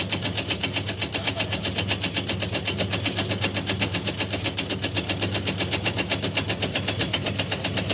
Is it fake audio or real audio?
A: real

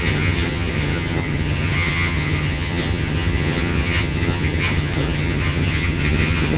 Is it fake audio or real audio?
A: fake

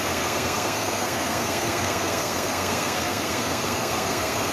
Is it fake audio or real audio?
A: fake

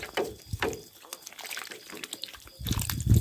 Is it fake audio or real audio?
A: real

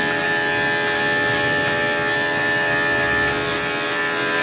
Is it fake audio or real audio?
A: real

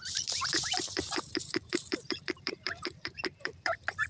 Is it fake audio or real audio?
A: fake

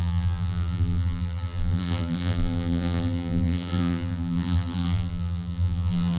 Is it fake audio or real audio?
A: fake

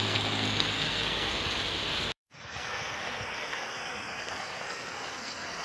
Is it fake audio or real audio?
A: fake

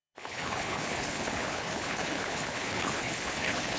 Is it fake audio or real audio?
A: fake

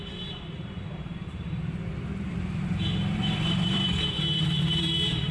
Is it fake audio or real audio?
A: fake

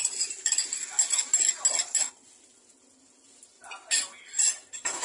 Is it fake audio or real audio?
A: real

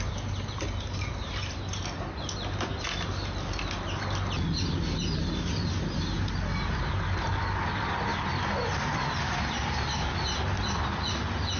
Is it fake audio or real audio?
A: real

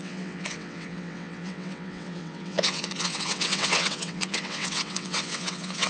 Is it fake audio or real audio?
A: fake